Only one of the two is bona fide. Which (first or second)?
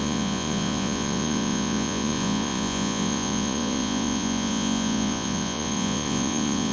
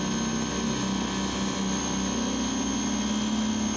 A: second